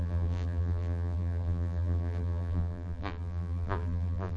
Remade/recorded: remade